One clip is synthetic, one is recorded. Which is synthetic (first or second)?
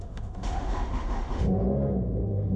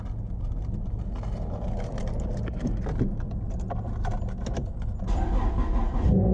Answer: first